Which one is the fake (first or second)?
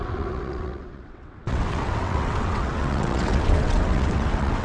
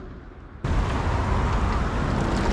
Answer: first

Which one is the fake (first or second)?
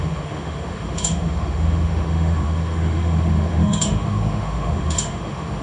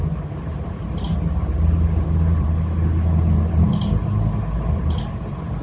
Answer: first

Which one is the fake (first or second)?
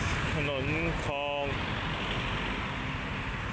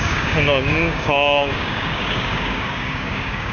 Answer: second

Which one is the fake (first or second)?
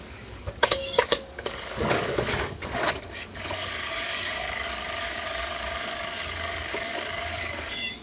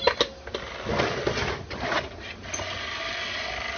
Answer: first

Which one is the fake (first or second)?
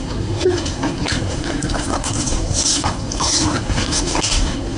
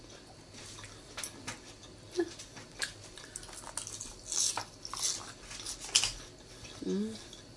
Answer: first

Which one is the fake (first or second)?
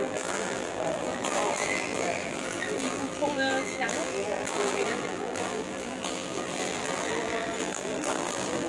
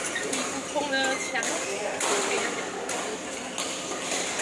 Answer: first